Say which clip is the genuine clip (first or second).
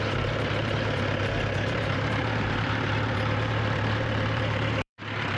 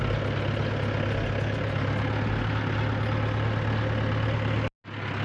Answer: second